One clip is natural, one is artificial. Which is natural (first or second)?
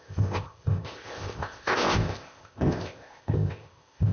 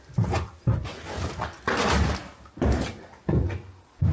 second